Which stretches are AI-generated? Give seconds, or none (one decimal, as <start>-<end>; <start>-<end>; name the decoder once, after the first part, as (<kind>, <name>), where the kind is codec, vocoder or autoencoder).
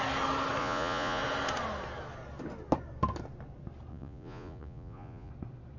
0.6-1.2 (vocoder, Vocos); 3.9-5.3